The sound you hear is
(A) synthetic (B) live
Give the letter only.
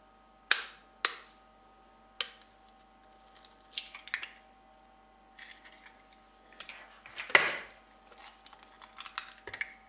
B